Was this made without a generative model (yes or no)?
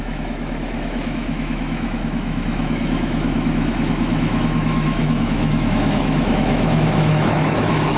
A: no